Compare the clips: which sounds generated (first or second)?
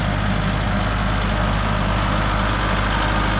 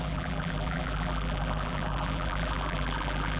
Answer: second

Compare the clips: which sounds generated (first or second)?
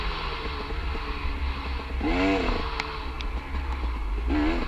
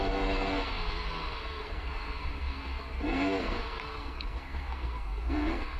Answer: second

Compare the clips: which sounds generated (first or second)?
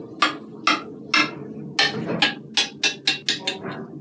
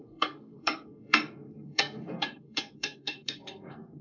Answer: second